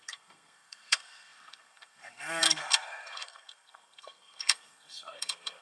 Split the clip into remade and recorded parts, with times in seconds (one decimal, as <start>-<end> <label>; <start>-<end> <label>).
0.0-5.6 remade

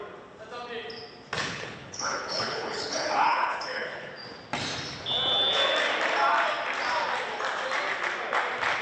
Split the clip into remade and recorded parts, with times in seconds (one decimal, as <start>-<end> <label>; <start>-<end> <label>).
0.0-1.4 recorded; 1.4-4.1 remade; 4.1-8.8 recorded

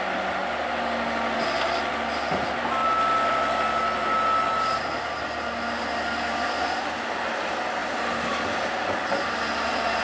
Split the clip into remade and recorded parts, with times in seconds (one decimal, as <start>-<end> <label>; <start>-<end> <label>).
0.0-10.0 recorded

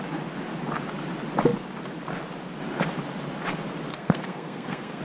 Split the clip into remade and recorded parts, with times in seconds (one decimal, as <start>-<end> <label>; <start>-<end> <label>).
0.0-3.9 recorded; 3.9-5.0 remade